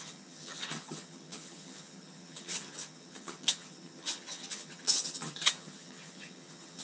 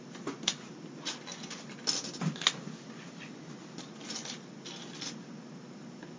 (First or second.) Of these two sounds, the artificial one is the first